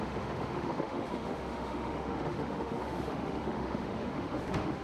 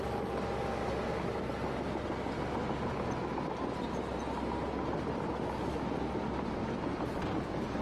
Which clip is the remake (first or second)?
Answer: first